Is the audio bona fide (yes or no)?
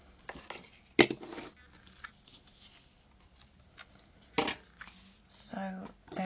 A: yes